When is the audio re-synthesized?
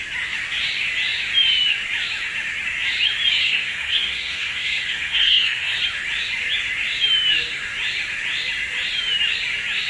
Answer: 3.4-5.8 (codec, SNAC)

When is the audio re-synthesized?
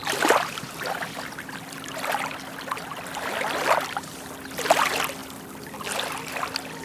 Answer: 0.0-4.1 (vocoder, BigVGAN v2); 5.2-6.3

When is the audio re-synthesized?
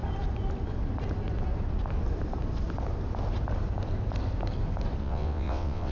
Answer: 5.0-5.9 (vocoder, WaveNeXt)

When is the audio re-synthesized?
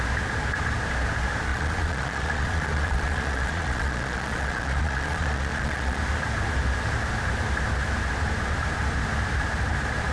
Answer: 1.5-6.0 (vocoder, Vocos)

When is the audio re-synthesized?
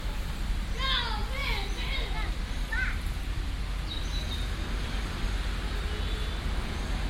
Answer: none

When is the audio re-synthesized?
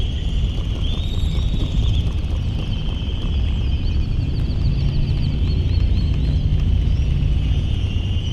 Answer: 1.6-2.7 (vocoder, Vocos); 6.5-8.3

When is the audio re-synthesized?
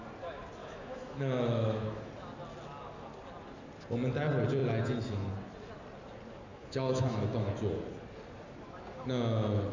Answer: 0.6-2.1 (autoencoder, DAC-VAE); 6.5-7.5